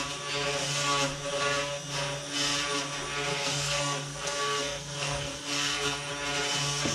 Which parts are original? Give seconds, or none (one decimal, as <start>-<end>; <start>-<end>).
0.0-3.3; 6.1-6.9

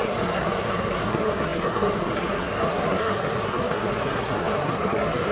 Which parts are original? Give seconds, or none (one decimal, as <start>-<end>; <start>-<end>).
none